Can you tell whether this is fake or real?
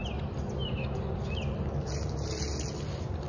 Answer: real